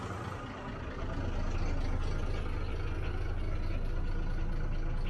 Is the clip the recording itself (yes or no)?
yes